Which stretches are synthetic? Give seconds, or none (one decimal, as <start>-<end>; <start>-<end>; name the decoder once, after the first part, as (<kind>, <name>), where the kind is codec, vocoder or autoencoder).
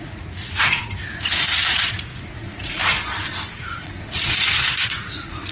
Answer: 0.0-0.9 (vocoder, Vocos); 1.7-2.8; 3.5-5.5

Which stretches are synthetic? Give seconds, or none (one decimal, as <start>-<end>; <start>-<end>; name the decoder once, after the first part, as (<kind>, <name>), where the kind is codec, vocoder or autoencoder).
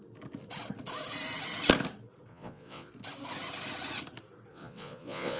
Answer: 2.3-2.9 (vocoder, Vocos); 4.5-5.4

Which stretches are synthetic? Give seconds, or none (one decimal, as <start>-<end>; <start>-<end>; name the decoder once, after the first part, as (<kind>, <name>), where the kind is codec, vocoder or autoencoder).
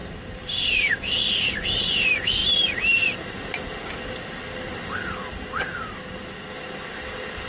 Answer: 0.0-1.0 (vocoder, BigVGAN v2); 2.4-3.0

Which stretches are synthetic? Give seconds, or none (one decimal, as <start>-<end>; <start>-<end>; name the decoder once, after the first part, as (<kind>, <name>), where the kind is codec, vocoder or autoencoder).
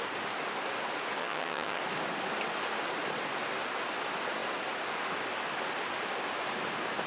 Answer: 1.2-1.8 (vocoder, HiFi-GAN)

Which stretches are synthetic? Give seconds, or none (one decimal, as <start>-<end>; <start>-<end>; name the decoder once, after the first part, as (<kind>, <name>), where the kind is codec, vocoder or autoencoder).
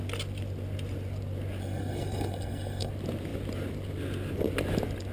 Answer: 1.6-2.9 (codec, SNAC)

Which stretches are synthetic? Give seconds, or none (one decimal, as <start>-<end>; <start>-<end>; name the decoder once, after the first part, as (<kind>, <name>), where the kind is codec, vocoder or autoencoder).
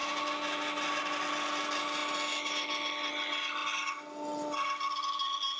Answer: none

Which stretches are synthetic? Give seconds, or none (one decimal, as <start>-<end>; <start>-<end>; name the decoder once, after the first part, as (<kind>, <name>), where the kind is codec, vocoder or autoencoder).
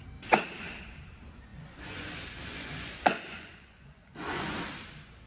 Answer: 1.5-4.6 (vocoder, Vocos)